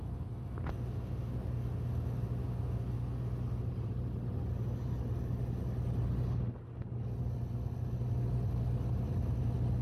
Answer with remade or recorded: recorded